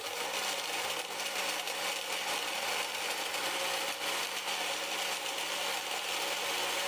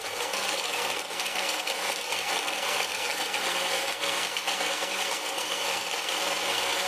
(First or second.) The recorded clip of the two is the first